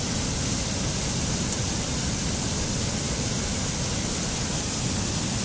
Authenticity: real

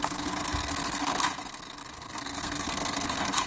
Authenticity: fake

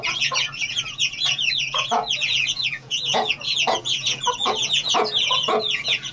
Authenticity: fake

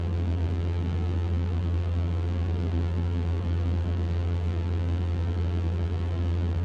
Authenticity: fake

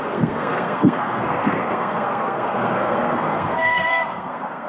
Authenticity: fake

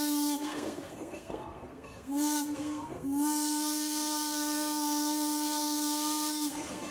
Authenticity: fake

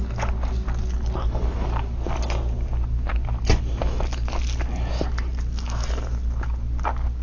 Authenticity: real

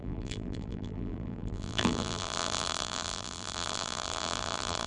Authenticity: fake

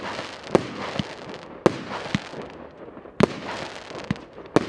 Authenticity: real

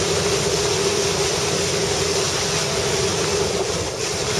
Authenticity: real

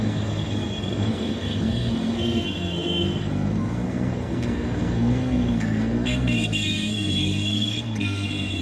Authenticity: fake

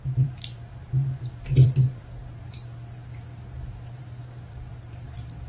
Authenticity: fake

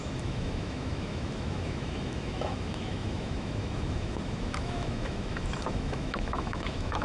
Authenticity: fake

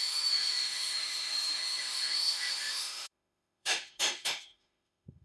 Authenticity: fake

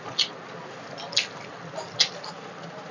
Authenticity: real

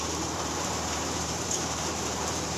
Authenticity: fake